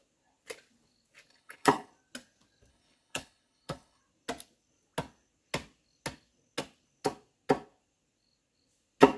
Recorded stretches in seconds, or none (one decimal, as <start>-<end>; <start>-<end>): 0.0-1.3; 1.9-2.7; 4.0-9.2